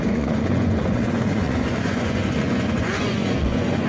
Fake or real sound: fake